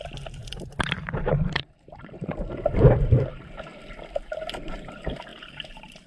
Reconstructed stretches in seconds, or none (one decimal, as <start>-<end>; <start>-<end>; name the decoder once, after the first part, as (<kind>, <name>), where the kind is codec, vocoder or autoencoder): 0.0-3.7 (vocoder, BigVGAN v2); 4.7-6.1